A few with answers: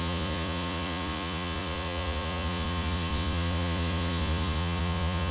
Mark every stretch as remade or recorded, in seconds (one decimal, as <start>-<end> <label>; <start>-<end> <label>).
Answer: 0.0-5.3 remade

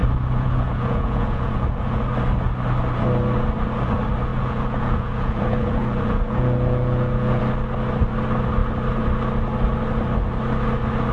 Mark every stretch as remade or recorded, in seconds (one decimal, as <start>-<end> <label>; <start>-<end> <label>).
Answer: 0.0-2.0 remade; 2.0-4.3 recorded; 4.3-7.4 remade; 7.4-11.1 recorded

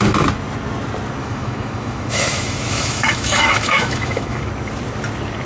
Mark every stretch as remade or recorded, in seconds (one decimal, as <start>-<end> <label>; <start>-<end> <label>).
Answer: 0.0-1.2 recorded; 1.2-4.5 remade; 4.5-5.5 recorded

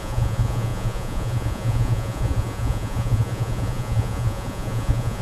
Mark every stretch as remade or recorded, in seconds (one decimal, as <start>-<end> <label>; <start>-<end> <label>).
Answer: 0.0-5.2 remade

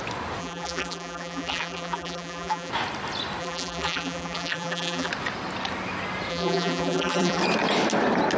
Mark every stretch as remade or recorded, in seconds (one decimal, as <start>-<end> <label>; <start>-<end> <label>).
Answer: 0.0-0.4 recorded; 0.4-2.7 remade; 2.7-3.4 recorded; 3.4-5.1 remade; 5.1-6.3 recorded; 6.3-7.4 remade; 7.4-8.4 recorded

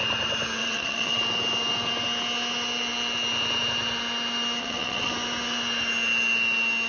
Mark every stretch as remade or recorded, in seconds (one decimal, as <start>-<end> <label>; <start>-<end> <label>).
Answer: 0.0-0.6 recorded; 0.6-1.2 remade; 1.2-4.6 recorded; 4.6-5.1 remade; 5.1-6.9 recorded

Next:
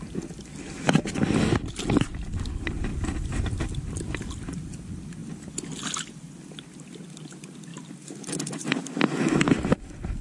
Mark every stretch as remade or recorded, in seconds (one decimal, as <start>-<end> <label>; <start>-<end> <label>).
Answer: 0.0-10.2 recorded